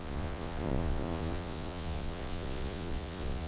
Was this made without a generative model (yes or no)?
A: no